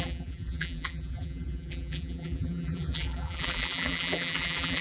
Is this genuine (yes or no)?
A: no